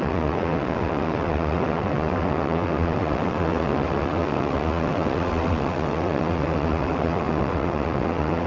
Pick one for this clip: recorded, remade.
remade